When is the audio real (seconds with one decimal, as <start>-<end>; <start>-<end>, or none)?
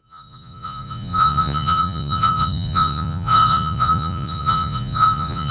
none